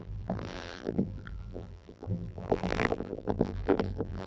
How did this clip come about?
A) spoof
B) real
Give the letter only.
A